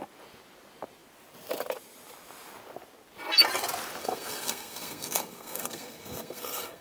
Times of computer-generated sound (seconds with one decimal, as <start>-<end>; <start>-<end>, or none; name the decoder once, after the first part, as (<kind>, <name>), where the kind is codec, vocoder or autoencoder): 4.0-6.8 (codec, SNAC)